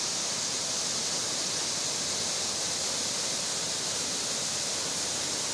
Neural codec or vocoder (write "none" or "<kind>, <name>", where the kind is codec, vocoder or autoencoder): none